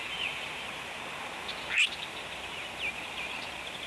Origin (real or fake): real